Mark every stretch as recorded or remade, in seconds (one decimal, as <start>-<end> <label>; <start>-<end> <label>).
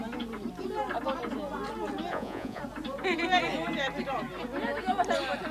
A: 0.0-2.1 recorded; 2.1-2.6 remade; 2.6-5.5 recorded